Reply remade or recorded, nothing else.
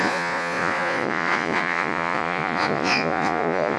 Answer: remade